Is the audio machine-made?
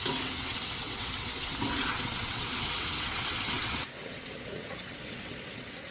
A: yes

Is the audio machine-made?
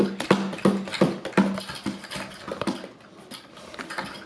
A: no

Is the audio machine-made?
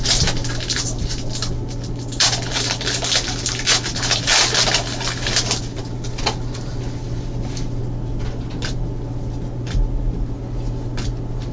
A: no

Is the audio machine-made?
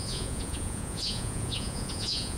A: yes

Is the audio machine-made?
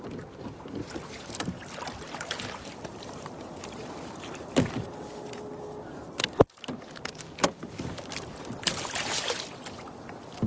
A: no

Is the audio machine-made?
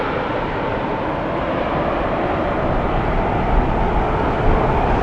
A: no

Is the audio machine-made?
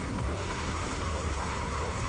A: yes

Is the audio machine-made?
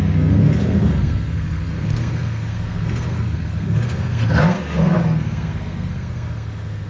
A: yes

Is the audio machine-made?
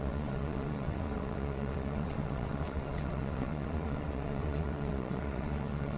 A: yes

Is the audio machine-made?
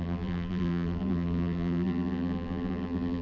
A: yes